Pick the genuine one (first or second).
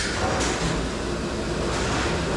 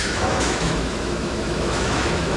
first